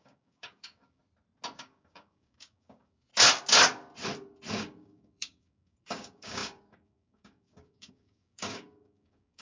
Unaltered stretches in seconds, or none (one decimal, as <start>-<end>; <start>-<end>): 1.0-1.6; 3.1-4.5